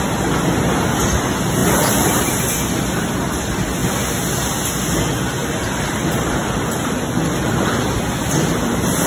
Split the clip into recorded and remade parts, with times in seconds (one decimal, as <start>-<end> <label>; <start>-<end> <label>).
0.0-1.6 recorded; 1.6-2.3 remade; 2.3-5.4 recorded; 5.4-7.4 remade; 7.4-9.1 recorded